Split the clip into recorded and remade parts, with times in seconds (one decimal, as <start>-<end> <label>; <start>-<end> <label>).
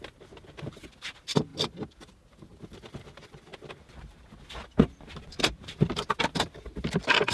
0.0-7.3 recorded